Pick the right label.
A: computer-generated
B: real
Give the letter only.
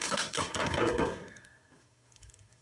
A